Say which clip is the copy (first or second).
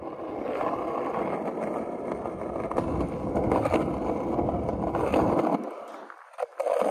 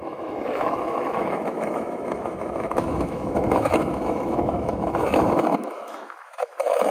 second